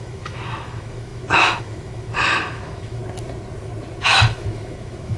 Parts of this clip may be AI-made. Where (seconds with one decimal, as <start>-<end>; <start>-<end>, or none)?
0.0-3.0; 4.0-5.2